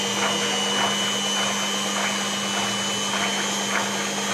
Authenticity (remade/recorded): recorded